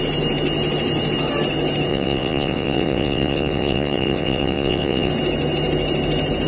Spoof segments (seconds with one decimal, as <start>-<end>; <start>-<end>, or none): 1.9-5.1